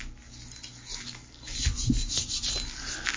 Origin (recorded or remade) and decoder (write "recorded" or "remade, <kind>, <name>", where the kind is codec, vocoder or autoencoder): recorded